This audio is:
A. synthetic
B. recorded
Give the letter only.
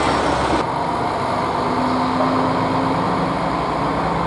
B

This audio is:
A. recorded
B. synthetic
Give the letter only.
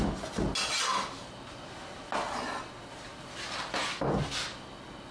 A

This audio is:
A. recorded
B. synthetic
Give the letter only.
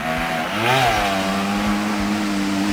A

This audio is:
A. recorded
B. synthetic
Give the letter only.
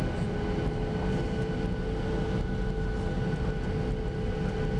A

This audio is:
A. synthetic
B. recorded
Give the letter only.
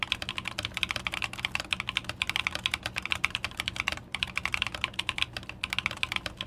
B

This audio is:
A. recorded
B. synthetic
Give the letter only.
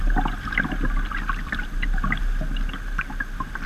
A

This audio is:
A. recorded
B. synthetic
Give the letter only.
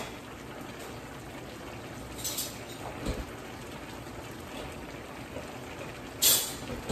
A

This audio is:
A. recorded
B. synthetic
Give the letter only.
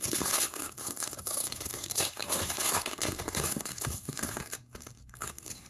B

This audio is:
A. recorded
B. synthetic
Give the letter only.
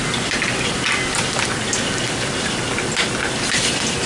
A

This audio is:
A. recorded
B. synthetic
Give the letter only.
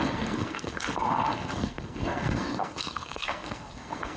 B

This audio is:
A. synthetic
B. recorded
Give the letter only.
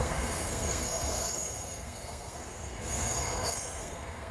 A